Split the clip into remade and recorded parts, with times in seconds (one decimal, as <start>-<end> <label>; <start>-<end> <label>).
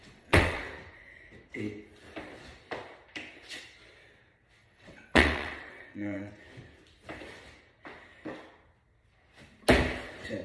0.0-0.6 remade; 0.6-4.6 recorded; 4.6-6.3 remade; 6.3-10.4 recorded